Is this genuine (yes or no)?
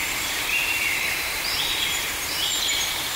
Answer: no